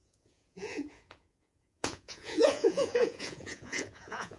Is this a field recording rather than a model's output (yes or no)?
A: no